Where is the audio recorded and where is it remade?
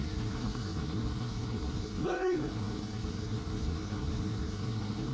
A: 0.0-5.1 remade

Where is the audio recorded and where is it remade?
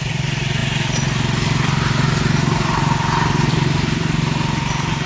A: 0.0-5.1 recorded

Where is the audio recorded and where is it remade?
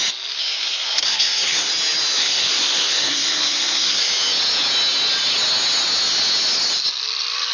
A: 0.0-0.4 recorded; 0.4-1.7 remade; 1.7-2.2 recorded; 2.2-4.1 remade; 4.1-7.5 recorded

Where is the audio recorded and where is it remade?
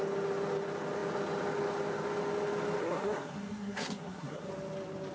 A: 0.0-2.8 recorded; 2.8-4.5 remade; 4.5-5.1 recorded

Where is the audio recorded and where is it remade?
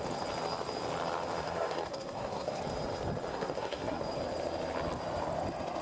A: 0.0-1.4 recorded; 1.4-2.6 remade; 2.6-3.3 recorded; 3.3-4.0 remade; 4.0-5.8 recorded